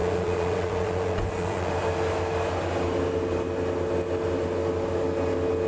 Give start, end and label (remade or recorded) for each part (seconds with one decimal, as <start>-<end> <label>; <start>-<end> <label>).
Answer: 0.0-1.7 remade; 1.7-5.7 recorded